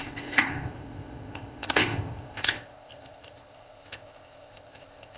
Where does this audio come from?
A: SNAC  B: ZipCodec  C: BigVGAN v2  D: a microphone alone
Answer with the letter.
B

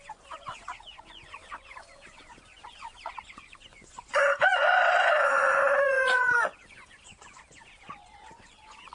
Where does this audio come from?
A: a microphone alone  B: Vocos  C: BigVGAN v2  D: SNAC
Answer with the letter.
B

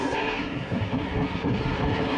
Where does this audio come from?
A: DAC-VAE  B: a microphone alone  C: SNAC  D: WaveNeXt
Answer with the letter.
C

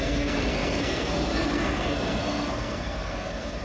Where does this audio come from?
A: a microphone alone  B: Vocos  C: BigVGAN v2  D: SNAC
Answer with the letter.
D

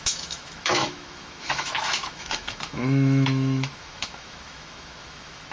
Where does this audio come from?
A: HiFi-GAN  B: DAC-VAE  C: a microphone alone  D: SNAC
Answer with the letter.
B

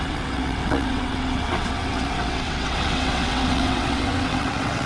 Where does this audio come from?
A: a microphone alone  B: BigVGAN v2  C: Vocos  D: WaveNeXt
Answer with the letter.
D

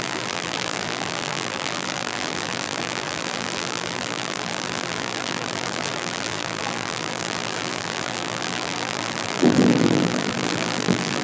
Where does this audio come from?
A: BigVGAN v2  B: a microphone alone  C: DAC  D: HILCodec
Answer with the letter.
A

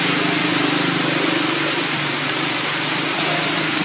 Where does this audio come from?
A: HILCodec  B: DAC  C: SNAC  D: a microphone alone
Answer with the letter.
D